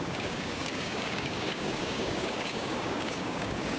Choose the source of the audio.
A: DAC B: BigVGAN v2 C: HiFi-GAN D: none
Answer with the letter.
A